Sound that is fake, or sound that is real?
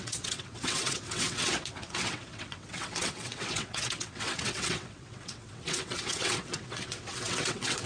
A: fake